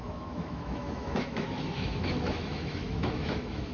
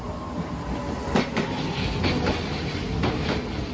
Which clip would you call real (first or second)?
second